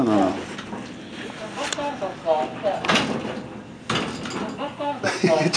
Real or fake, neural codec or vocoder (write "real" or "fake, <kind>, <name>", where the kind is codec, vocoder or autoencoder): real